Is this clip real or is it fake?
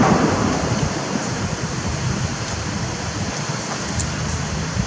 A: fake